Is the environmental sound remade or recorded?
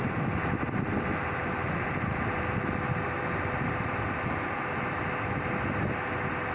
recorded